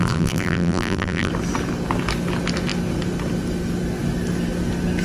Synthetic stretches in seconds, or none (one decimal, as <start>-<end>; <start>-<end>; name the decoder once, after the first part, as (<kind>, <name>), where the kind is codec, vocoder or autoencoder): 0.0-1.3 (vocoder, BigVGAN v2)